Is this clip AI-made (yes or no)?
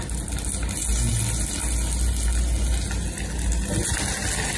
no